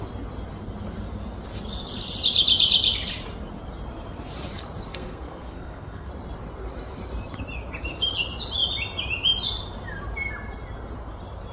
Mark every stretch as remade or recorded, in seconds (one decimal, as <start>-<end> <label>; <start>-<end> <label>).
0.0-4.9 recorded; 4.9-6.1 remade; 6.1-11.5 recorded